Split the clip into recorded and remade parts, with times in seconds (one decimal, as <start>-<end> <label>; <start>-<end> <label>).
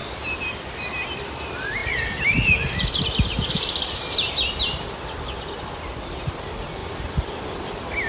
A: 0.0-0.8 remade; 0.8-1.8 recorded; 1.8-5.5 remade; 5.5-8.1 recorded